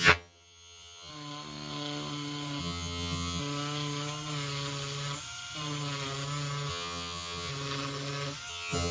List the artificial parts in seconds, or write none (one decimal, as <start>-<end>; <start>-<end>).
0.0-1.1; 2.6-3.4; 6.7-7.5; 8.5-8.9